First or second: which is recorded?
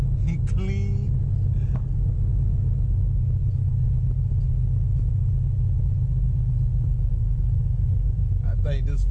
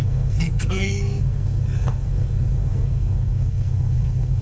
first